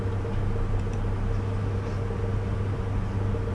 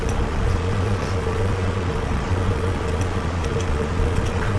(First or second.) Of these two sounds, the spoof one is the second